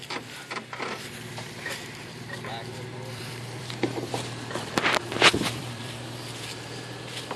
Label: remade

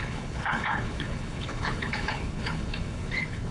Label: remade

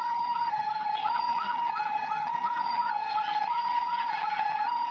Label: remade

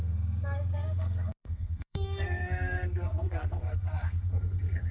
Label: remade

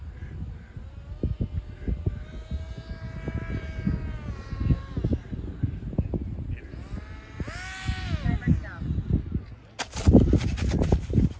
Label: recorded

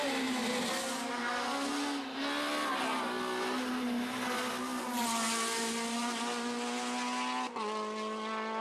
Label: recorded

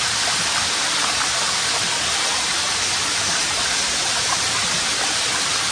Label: recorded